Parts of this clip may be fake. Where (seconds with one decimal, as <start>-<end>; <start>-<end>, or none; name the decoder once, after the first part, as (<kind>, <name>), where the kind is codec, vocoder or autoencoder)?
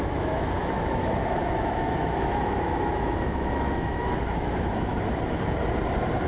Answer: 0.0-4.9 (autoencoder, DAC-VAE)